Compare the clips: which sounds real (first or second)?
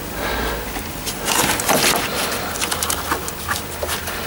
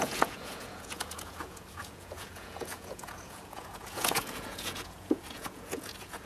first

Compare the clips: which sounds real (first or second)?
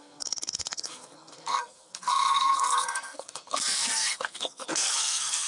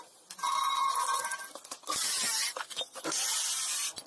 second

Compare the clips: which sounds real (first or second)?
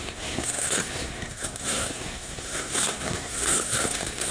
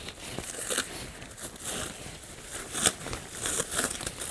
second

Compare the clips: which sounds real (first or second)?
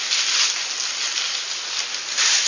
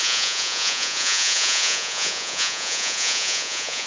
first